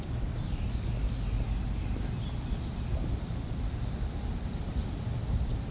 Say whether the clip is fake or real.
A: real